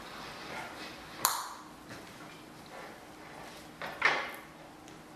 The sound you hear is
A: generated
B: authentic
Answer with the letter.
B